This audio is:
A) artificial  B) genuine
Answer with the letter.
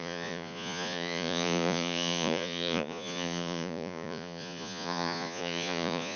A